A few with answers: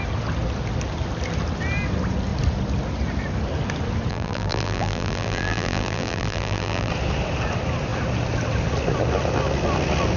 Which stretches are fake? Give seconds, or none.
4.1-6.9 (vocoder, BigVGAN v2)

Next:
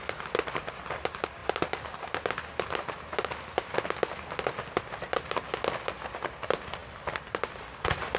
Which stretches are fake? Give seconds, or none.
6.8-7.7 (vocoder, BigVGAN v2)

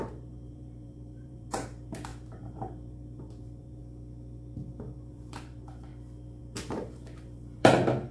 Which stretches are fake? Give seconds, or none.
0.0-3.8 (vocoder, BigVGAN v2); 5.1-5.9; 6.4-8.1

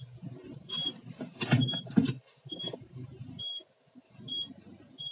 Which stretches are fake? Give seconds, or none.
0.4-3.5 (vocoder, BigVGAN v2)